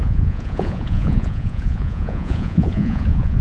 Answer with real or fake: fake